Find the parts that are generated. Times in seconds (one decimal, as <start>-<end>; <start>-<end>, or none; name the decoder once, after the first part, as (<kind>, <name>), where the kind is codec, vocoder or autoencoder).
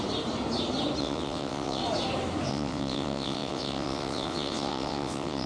1.0-1.8 (vocoder, WaveNeXt); 2.5-5.5